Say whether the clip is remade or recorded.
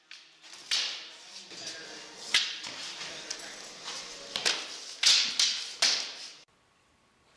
recorded